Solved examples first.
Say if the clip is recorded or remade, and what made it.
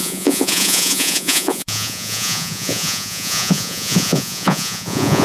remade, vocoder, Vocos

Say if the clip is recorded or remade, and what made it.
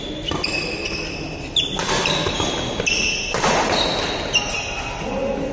recorded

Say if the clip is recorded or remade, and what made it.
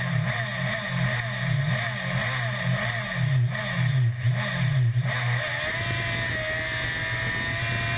recorded